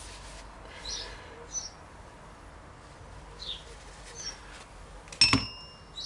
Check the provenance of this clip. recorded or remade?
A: recorded